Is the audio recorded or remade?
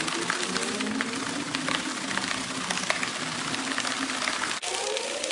recorded